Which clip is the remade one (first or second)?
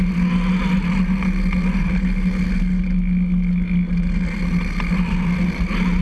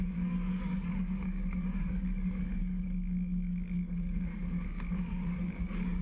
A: second